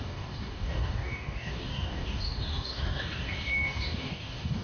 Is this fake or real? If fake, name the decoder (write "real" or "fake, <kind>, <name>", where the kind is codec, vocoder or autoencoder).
fake, codec, DAC